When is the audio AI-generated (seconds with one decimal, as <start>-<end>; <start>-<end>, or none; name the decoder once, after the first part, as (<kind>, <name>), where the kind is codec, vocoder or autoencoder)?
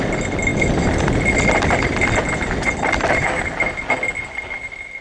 none